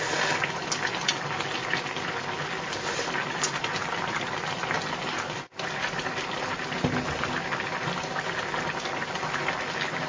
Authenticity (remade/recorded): recorded